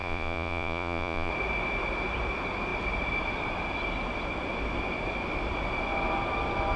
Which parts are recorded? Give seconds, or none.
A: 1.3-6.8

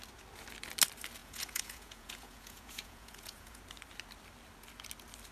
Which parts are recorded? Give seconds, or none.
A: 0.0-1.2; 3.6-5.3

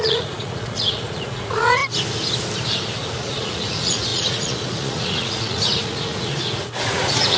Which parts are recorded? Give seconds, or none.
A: 1.8-3.2

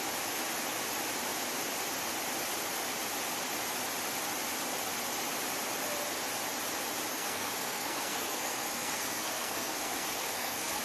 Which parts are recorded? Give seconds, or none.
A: 0.0-7.1

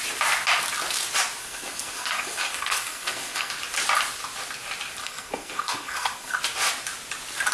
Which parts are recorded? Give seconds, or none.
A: 0.0-1.4; 3.5-5.0; 6.4-7.5